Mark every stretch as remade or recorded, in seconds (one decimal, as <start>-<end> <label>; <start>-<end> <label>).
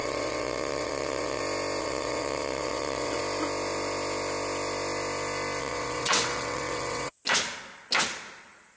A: 0.0-1.4 remade; 1.4-1.8 recorded; 1.8-3.2 remade; 3.2-5.6 recorded; 5.6-7.2 remade; 7.2-8.8 recorded